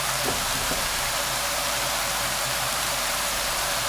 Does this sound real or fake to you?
fake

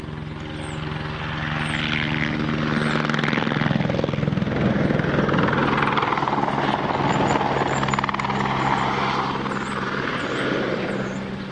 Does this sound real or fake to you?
real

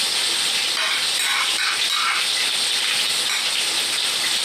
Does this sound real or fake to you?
real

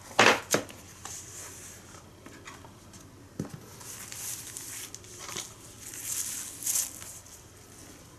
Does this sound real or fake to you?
real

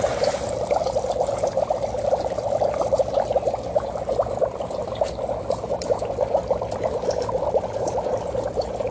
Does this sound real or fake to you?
fake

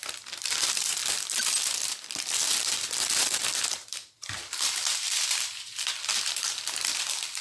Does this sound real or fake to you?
fake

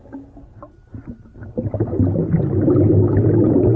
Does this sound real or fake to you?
real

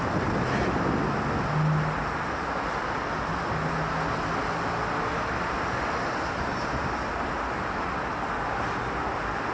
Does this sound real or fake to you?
real